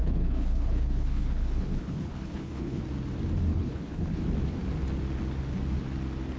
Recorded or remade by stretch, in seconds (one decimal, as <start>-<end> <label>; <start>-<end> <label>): 0.0-2.8 remade; 2.8-3.5 recorded; 3.5-4.2 remade; 4.2-6.4 recorded